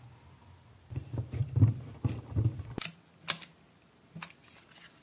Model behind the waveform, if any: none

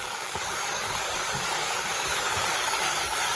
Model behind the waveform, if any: codec, DAC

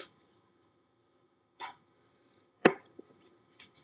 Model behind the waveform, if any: vocoder, HiFi-GAN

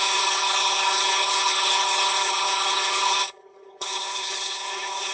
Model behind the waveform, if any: codec, HILCodec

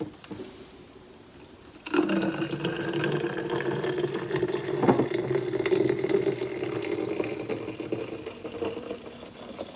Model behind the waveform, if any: none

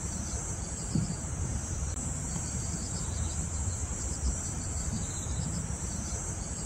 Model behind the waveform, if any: vocoder, BigVGAN v2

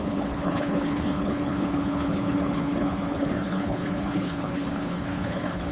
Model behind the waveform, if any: codec, HILCodec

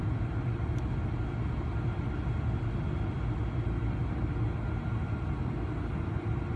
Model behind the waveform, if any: none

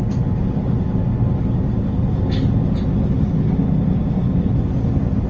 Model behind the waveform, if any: none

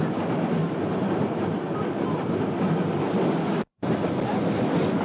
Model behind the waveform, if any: none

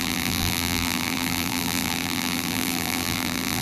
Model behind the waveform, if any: vocoder, BigVGAN v2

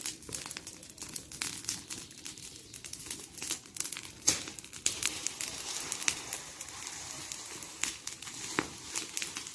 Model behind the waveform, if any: none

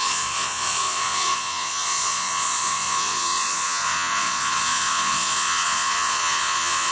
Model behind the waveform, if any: vocoder, Vocos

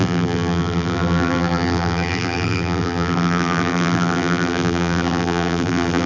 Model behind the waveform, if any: vocoder, BigVGAN v2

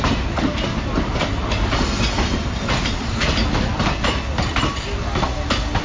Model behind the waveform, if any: none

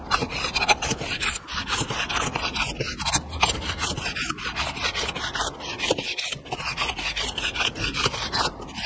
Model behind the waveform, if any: none